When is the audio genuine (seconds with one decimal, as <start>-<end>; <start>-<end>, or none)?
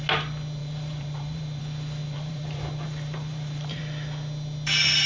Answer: 0.0-0.6; 1.6-2.0; 3.8-5.1